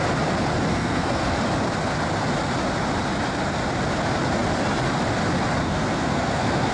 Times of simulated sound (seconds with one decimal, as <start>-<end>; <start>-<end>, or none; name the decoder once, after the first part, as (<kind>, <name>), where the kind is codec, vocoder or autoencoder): 0.7-1.3 (codec, SNAC); 5.6-6.7